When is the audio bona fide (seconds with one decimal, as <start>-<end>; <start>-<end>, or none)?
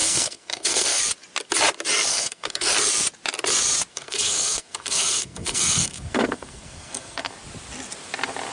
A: 1.0-2.1; 2.7-3.9; 7.3-8.5